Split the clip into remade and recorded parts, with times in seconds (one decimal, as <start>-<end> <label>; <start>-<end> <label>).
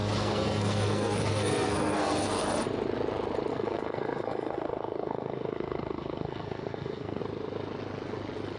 0.0-2.4 remade; 2.4-3.5 recorded; 3.5-7.2 remade; 7.2-8.6 recorded